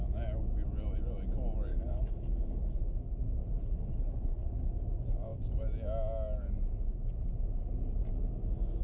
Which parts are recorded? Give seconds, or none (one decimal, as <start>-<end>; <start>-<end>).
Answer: 0.0-1.7; 2.8-3.6; 4.7-8.8